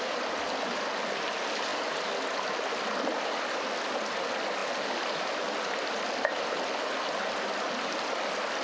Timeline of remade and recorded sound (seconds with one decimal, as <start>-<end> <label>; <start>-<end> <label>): 0.0-8.6 recorded